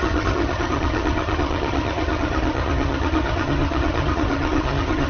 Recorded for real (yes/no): no